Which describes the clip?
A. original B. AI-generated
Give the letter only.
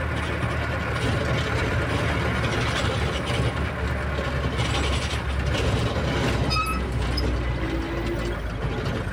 A